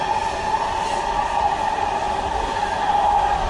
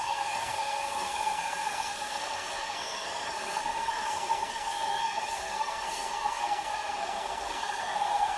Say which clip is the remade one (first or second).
second